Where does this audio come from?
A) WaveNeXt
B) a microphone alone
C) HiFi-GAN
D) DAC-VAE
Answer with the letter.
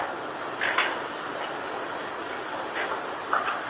B